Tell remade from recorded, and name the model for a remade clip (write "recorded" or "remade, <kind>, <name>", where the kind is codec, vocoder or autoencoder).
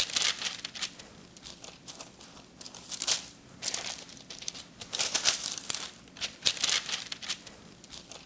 remade, vocoder, BigVGAN v2